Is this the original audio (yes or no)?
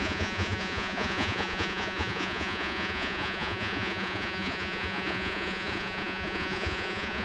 no